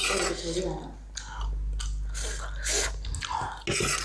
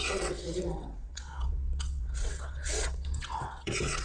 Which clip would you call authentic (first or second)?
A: first